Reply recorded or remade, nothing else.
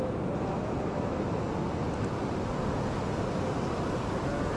recorded